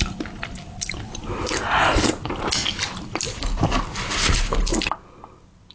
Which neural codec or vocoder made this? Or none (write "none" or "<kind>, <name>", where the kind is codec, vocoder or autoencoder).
none